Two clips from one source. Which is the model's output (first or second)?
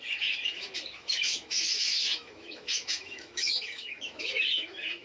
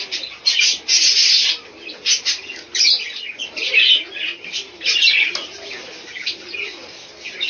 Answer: first